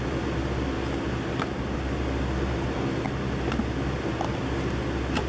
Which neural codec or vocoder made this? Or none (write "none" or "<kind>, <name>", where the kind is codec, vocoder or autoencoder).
none